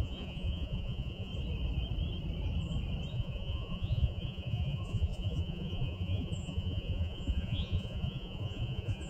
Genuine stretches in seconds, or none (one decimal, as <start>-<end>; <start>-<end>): 1.3-3.1